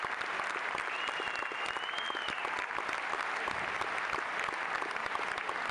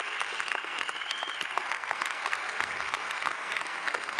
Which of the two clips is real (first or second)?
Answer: first